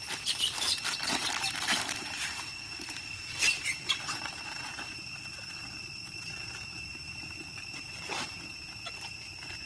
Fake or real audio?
fake